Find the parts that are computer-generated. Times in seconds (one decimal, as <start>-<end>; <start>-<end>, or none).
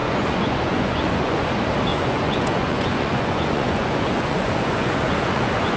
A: 0.0-1.5; 1.9-5.8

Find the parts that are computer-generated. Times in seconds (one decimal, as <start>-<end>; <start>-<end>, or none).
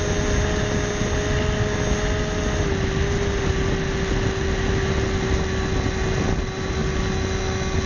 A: none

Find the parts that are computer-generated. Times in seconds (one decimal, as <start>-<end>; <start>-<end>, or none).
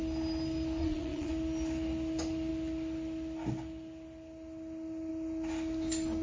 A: 0.8-1.3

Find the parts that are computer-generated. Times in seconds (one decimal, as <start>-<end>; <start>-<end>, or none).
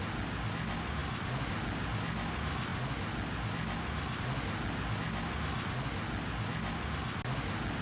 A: none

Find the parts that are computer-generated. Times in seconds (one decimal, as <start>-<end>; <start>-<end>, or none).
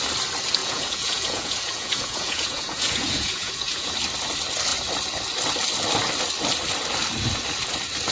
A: 0.6-3.9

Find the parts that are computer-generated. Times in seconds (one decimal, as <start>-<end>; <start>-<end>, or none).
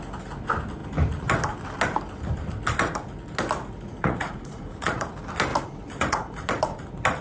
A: 3.9-5.1; 5.5-6.8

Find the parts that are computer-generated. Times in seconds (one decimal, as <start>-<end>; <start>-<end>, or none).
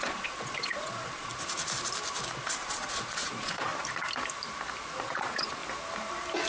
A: 0.0-1.3; 2.4-3.7; 5.0-5.6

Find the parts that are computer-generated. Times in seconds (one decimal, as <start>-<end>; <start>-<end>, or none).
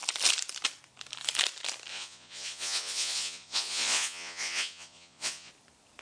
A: 1.9-5.5